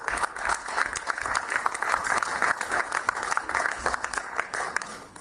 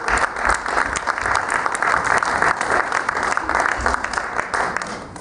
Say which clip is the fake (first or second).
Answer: first